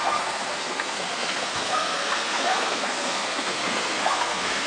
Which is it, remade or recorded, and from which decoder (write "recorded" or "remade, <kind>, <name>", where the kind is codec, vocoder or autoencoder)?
remade, codec, SNAC